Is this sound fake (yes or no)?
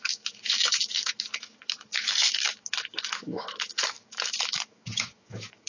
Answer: yes